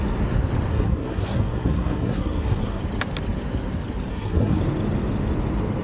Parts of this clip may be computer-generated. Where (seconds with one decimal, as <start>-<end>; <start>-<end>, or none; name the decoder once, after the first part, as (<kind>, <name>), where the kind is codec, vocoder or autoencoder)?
0.7-2.8 (codec, SNAC); 4.1-4.6